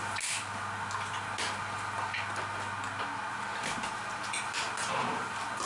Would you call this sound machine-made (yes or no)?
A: no